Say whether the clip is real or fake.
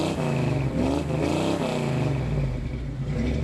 real